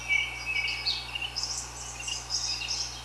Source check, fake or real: real